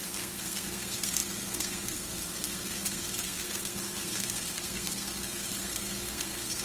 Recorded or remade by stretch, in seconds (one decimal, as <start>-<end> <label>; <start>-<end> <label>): 0.0-6.6 remade